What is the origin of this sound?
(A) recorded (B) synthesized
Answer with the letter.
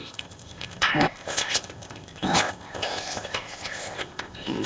B